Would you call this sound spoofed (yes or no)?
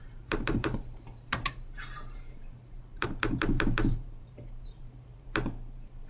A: yes